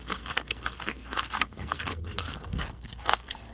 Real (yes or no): no